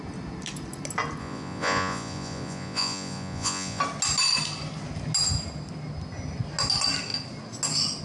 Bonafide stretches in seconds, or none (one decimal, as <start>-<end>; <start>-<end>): 0.0-1.2; 3.8-8.0